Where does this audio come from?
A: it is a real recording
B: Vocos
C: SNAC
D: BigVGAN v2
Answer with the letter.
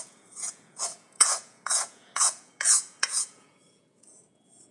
B